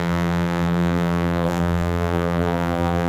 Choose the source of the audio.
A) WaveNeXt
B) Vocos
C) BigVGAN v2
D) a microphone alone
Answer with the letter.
C